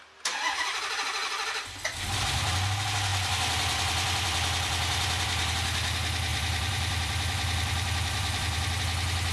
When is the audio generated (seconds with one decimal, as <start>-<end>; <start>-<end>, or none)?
1.2-1.8; 3.1-5.5; 6.3-8.8